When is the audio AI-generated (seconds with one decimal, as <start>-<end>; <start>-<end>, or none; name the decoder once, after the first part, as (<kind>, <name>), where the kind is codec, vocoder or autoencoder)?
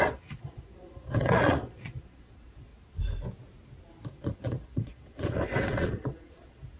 0.0-2.7 (vocoder, Vocos); 4.1-6.8